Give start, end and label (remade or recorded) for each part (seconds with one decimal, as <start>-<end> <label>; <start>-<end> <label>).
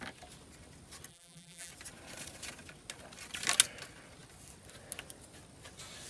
0.0-1.1 recorded; 1.1-1.7 remade; 1.7-6.1 recorded